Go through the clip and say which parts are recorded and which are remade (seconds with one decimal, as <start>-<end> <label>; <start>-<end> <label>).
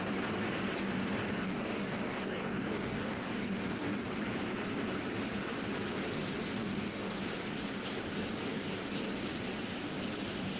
0.0-1.4 recorded; 1.4-4.0 remade; 4.0-6.6 recorded; 6.6-7.2 remade; 7.2-10.6 recorded